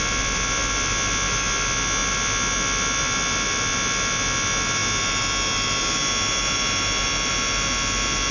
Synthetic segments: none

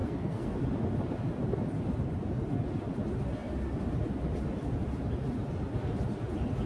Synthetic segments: 0.0-0.6 (codec, SNAC)

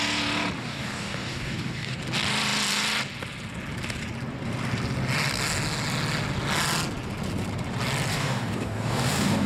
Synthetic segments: 0.6-2.0 (codec, DAC); 8.1-9.5

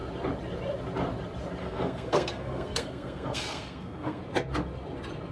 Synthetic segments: 1.6-4.2 (codec, SNAC)

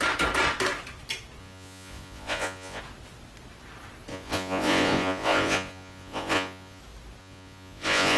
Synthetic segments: 1.4-2.8 (vocoder, Vocos); 4.1-6.8; 7.2-8.2

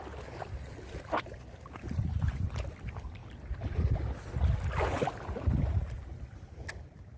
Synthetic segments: none